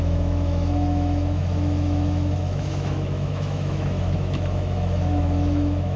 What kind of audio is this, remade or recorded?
remade